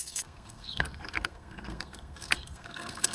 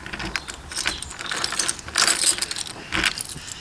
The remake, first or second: first